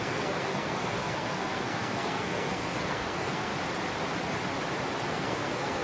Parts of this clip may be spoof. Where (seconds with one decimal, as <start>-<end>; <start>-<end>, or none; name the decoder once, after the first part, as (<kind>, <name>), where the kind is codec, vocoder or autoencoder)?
0.0-3.5 (codec, SNAC); 5.1-5.8